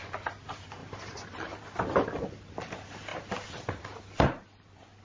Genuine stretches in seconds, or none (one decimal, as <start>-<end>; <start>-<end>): 0.0-5.0